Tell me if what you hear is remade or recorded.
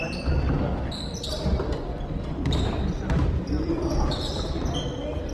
remade